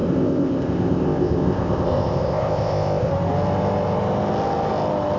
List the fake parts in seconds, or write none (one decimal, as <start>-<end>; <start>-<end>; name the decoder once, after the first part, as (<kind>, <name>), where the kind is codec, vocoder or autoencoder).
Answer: 0.0-3.1 (codec, ZipCodec)